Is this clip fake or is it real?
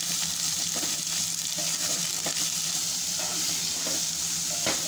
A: fake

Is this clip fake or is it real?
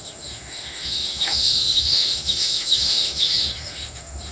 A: fake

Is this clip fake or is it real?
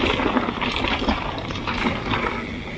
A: real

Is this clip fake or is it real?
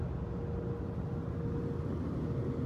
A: real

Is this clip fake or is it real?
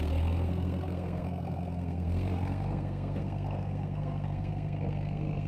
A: fake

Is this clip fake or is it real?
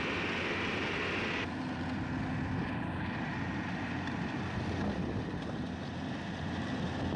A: real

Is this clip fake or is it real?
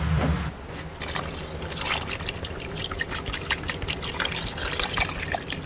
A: real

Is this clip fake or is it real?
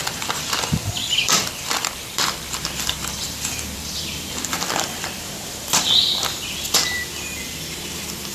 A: fake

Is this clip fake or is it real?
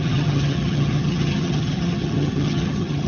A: fake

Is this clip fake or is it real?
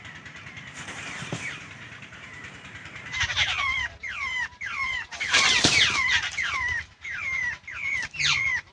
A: fake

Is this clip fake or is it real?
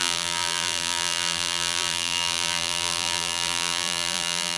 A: fake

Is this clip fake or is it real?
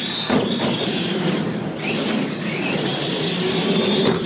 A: real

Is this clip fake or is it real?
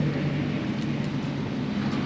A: real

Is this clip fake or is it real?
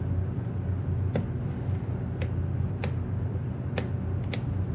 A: real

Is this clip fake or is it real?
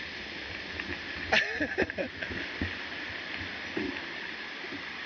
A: fake